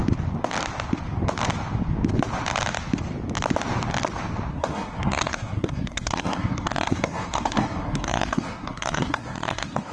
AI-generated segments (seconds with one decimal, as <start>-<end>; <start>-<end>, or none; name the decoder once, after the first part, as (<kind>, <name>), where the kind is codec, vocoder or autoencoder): 4.5-9.9 (codec, SNAC)